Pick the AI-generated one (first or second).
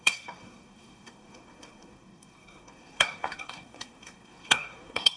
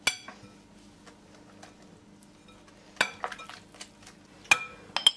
first